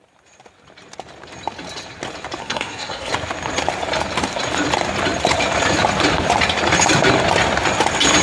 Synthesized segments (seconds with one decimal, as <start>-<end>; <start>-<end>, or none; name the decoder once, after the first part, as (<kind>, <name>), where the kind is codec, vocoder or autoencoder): 2.4-3.1 (codec, SNAC)